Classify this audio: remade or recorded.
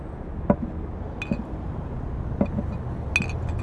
recorded